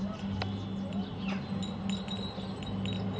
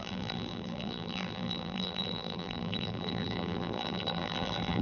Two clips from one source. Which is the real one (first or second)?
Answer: first